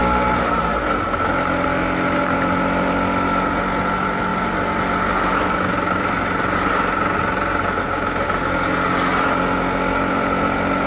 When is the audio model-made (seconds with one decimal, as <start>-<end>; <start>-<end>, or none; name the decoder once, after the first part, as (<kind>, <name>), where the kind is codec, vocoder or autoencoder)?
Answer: none